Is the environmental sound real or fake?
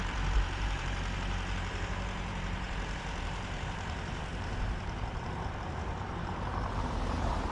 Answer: fake